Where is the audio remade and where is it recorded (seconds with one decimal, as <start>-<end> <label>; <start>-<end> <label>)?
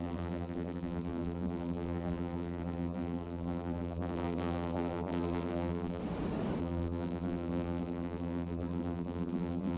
0.0-6.0 remade; 6.0-6.6 recorded; 6.6-9.8 remade